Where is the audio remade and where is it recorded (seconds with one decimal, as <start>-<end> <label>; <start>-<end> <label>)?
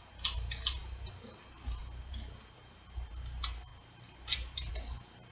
0.0-5.3 remade